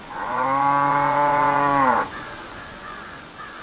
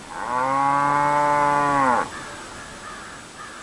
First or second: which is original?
second